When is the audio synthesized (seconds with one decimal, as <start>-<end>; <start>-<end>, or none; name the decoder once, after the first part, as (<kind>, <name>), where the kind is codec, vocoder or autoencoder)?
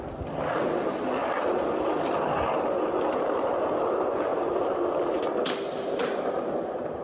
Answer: none